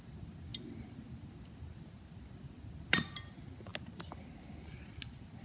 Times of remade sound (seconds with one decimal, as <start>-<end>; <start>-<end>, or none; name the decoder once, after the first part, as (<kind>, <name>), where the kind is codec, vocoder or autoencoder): none